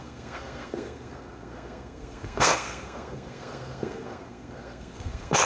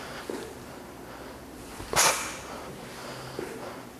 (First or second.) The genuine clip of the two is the second